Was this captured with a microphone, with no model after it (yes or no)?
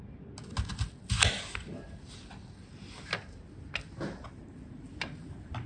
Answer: yes